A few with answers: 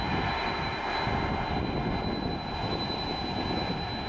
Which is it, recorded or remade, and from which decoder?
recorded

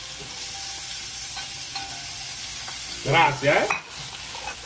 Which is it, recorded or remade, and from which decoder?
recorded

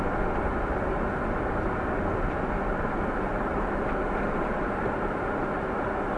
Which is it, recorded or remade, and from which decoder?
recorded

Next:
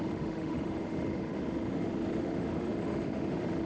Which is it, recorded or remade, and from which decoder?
remade, autoencoder, DAC-VAE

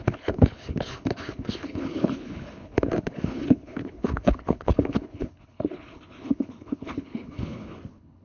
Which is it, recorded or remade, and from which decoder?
remade, codec, HILCodec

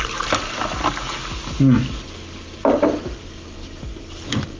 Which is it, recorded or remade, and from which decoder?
recorded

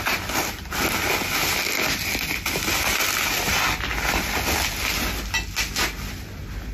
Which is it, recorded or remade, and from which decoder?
recorded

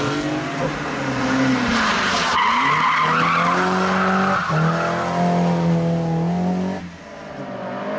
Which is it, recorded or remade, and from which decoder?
recorded